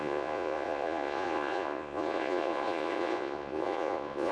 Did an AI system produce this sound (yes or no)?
yes